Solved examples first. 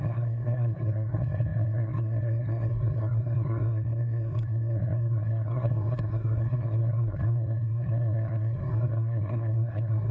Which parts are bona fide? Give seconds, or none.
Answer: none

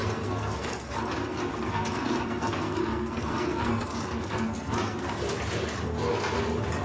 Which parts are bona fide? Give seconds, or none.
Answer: 0.9-1.3; 5.1-6.8

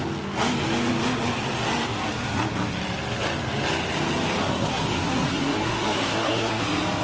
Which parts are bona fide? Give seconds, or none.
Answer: 0.0-4.4; 6.6-7.0